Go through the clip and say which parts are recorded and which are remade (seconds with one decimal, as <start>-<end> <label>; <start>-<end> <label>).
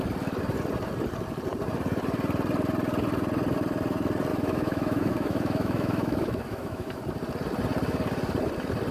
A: 0.0-4.3 recorded; 4.3-7.0 remade; 7.0-8.9 recorded